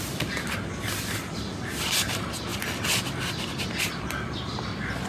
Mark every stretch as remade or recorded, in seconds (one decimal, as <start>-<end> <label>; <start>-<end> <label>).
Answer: 0.0-5.1 recorded

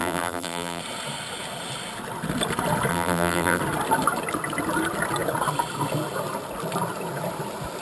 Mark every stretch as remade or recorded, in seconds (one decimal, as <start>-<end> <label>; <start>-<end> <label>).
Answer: 0.0-0.8 remade; 0.8-2.9 recorded; 2.9-3.6 remade; 3.6-7.8 recorded

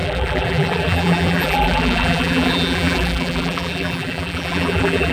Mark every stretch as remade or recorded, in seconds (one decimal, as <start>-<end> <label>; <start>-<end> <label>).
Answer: 0.0-5.1 remade

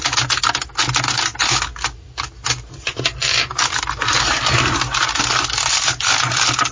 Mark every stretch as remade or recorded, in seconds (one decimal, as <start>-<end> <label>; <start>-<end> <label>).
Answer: 0.0-6.7 recorded

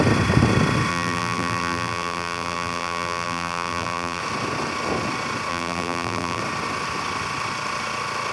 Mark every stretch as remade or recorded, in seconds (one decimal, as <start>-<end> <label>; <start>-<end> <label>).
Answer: 0.0-0.9 recorded; 0.9-4.2 remade; 4.2-5.5 recorded; 5.5-6.4 remade; 6.4-8.3 recorded

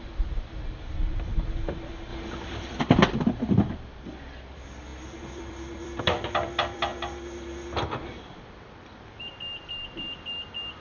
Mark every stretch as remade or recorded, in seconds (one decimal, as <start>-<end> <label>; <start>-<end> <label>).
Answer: 0.0-6.9 remade; 6.9-8.3 recorded; 8.3-10.8 remade

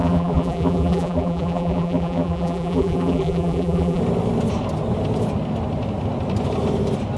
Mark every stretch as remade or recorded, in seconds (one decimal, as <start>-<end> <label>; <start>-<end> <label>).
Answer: 0.0-4.0 remade; 4.0-7.2 recorded